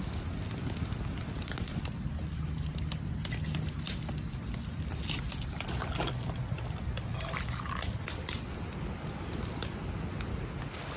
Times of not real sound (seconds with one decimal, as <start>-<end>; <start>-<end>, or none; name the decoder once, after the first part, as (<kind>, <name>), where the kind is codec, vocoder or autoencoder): none